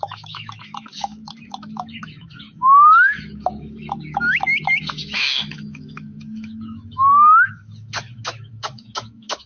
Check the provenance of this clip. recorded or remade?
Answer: remade